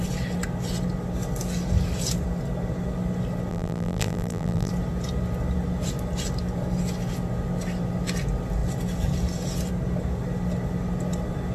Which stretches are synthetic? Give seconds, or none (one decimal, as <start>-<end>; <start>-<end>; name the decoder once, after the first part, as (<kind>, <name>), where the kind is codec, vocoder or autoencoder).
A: 3.5-4.7 (vocoder, BigVGAN v2)